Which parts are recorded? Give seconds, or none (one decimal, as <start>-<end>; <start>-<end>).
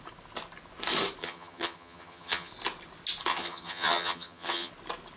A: 0.0-1.2; 2.5-3.3; 4.7-5.2